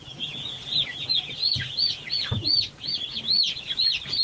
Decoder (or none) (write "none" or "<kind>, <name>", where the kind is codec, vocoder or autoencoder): vocoder, Vocos